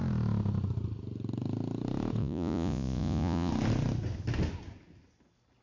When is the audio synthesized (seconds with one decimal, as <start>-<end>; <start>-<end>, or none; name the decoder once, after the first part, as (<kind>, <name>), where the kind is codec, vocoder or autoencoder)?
2.2-3.5 (vocoder, Vocos)